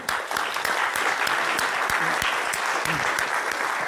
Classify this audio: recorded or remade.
recorded